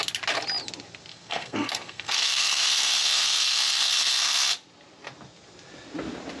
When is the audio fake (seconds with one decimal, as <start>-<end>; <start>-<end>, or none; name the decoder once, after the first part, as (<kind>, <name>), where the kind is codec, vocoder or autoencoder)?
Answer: 1.1-4.5 (codec, SNAC)